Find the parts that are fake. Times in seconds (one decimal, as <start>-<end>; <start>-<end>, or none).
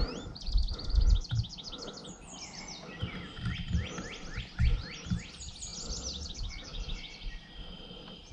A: none